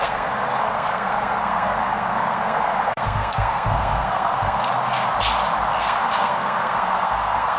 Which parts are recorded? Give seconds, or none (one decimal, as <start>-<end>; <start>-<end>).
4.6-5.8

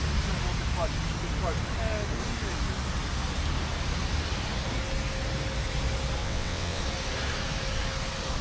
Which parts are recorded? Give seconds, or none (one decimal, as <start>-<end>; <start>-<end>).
0.0-6.2; 6.8-8.4

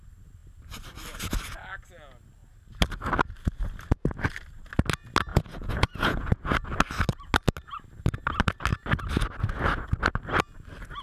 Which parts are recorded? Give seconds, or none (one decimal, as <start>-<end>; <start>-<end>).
0.0-5.3; 6.3-11.0

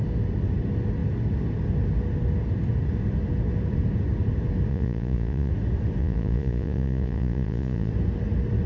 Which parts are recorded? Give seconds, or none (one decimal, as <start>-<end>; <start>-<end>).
0.0-4.7; 5.5-6.0; 7.9-8.7

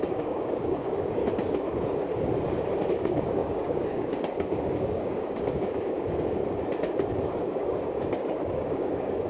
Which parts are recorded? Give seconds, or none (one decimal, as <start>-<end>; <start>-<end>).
1.2-2.9; 6.4-7.1